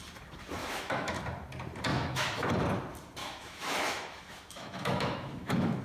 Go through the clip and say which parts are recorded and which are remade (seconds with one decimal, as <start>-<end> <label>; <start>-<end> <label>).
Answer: 0.0-0.6 recorded; 0.6-1.2 remade; 1.2-1.9 recorded; 1.9-2.5 remade; 2.5-3.2 recorded; 3.2-5.8 remade